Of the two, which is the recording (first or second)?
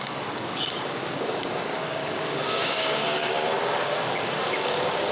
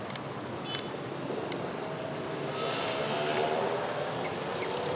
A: second